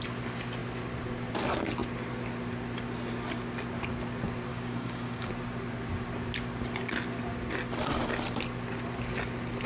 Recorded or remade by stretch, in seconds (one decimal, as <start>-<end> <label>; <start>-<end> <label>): 0.0-4.5 recorded; 4.5-5.3 remade; 5.3-9.7 recorded